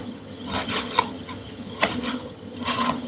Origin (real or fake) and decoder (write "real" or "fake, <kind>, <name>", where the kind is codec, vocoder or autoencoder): fake, vocoder, HiFi-GAN